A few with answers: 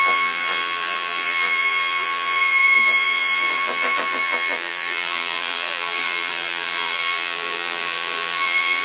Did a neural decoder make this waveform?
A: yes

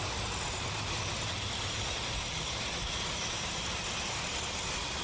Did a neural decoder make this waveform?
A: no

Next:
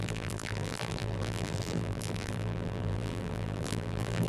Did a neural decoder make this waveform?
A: yes